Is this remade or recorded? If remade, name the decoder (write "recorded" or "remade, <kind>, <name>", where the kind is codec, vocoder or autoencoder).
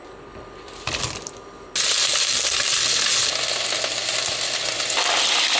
recorded